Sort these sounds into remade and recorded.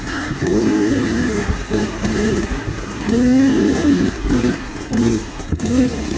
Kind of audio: remade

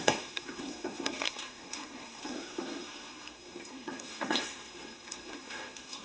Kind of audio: remade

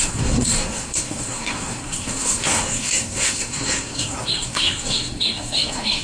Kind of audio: remade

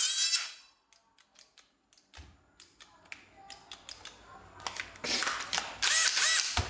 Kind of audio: recorded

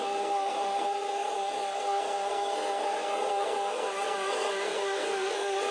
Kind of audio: remade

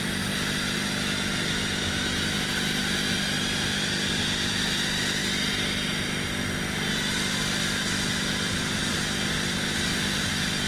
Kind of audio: recorded